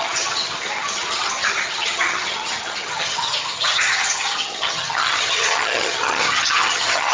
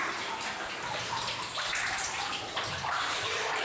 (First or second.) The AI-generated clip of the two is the first